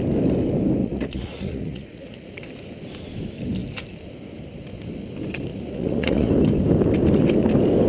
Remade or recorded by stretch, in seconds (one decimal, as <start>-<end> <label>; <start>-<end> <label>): 0.0-0.8 recorded; 0.8-2.3 remade; 2.3-5.5 recorded; 5.5-6.3 remade; 6.3-7.9 recorded